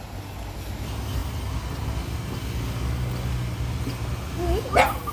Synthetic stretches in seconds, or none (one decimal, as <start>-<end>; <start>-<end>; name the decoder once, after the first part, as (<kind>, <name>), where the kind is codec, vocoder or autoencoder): none